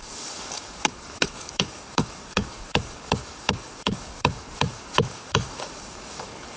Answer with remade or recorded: remade